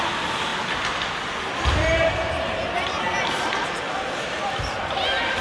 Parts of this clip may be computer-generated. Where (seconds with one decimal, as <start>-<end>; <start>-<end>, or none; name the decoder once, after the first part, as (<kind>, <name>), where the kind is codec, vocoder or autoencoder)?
none